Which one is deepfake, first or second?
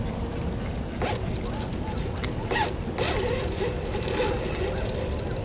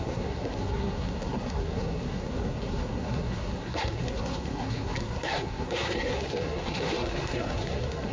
second